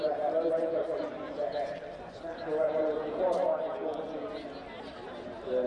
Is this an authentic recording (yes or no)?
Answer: yes